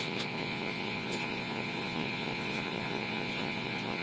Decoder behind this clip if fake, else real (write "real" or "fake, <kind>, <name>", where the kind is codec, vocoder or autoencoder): fake, vocoder, Vocos